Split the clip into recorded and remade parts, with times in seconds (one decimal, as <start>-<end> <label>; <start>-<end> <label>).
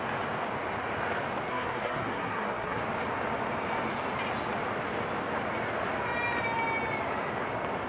0.0-1.5 recorded; 1.5-2.8 remade; 2.8-7.9 recorded